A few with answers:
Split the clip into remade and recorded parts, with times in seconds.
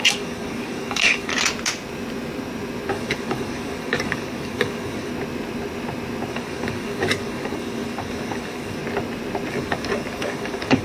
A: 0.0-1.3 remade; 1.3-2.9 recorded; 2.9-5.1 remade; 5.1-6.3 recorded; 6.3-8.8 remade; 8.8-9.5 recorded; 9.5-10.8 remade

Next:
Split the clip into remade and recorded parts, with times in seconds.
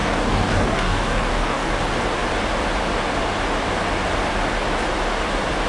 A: 0.0-1.7 remade; 1.7-5.7 recorded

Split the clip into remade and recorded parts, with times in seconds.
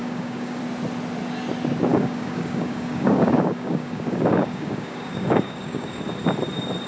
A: 0.0-0.6 remade; 0.6-1.9 recorded; 1.9-6.0 remade; 6.0-6.9 recorded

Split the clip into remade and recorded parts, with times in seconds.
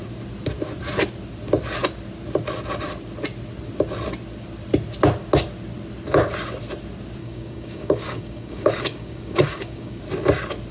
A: 0.0-7.2 recorded; 7.2-10.0 remade; 10.0-10.7 recorded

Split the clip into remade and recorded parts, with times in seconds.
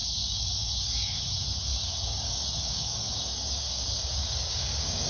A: 0.0-5.1 remade